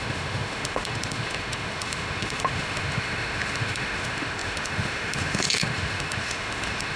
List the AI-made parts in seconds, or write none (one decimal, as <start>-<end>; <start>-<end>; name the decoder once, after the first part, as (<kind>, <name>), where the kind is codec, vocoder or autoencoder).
0.0-7.0 (autoencoder, DAC-VAE)